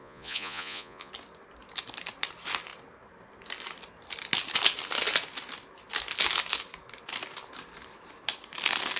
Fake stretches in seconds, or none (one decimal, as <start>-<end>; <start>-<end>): 0.0-1.1